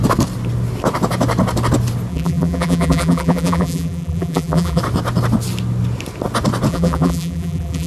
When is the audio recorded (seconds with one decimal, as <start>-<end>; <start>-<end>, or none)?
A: 0.0-2.1; 4.8-6.7